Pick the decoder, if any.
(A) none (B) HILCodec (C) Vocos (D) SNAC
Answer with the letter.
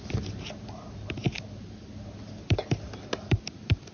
A